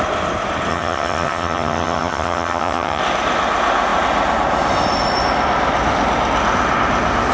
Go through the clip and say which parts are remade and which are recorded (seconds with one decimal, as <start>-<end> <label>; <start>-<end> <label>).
0.0-0.7 recorded; 0.7-3.0 remade; 3.0-7.3 recorded